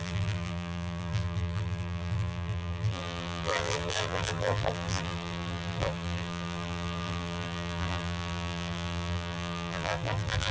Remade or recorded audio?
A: remade